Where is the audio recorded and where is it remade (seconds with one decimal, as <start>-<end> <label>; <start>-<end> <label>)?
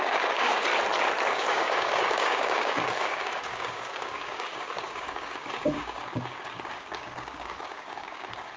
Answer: 0.0-0.7 remade; 0.7-1.3 recorded; 1.3-8.6 remade